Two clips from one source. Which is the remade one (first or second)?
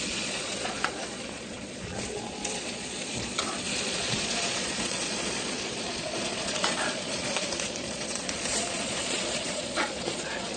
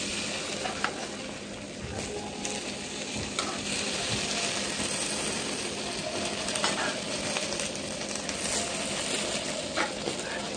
first